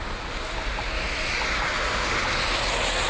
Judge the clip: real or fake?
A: real